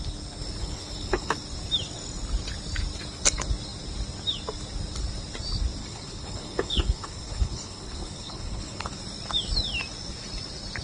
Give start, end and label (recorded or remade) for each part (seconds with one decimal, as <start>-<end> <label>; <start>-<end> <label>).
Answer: 0.0-0.6 recorded; 0.6-1.4 remade; 1.4-5.8 recorded; 5.8-9.0 remade; 9.0-10.8 recorded